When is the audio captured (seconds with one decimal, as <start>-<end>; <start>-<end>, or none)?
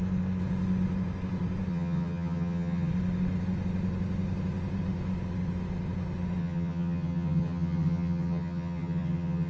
0.0-1.7; 2.9-6.4